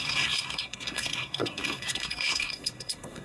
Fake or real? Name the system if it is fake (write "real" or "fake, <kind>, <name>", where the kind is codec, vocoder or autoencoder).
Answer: fake, codec, SNAC